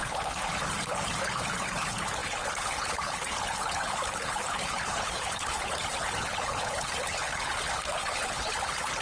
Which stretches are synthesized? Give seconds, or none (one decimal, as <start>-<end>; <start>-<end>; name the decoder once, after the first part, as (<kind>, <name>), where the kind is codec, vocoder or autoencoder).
0.0-9.0 (codec, HILCodec)